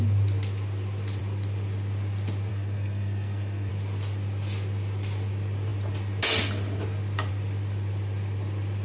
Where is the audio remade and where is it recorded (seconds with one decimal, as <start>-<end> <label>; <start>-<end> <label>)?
0.0-2.5 recorded; 2.5-3.7 remade; 3.7-8.8 recorded